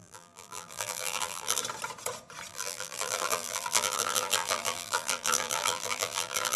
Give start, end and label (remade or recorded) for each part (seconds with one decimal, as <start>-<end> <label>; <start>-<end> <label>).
0.0-1.6 remade; 1.6-2.5 recorded; 2.5-6.6 remade